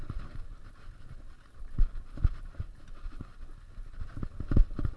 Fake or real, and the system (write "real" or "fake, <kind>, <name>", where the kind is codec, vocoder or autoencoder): real